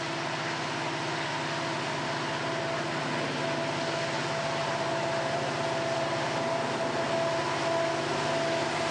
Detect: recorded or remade recorded